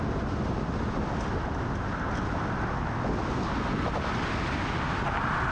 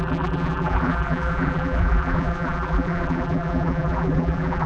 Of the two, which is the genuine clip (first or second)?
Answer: first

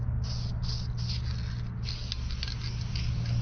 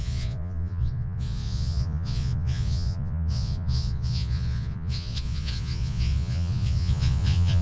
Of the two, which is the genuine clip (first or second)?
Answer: first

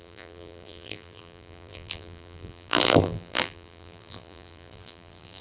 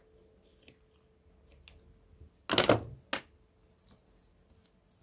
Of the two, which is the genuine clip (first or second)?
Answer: second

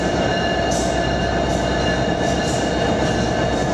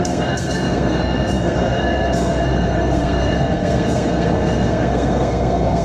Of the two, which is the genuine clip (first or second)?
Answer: first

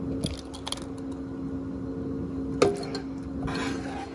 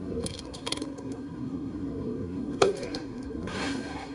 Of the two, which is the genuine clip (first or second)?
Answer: first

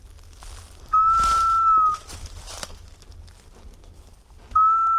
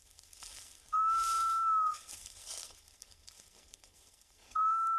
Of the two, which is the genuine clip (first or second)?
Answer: first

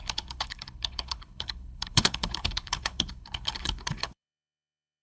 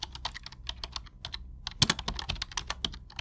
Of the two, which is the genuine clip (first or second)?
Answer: second